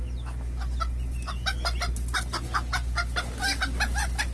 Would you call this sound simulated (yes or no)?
no